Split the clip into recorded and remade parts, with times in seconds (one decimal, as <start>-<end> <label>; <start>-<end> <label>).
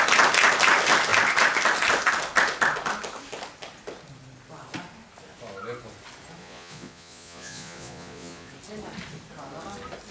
0.0-6.4 recorded; 6.4-8.5 remade; 8.5-10.1 recorded